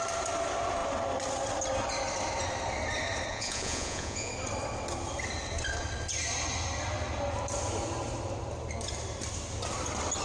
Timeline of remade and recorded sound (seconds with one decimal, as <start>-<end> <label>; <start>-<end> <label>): 0.0-3.3 recorded; 3.3-4.3 remade; 4.3-10.2 recorded